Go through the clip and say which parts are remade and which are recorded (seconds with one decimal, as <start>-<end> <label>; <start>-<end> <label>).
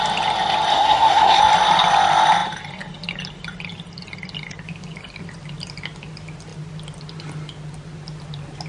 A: 0.0-0.7 recorded; 0.7-1.4 remade; 1.4-8.7 recorded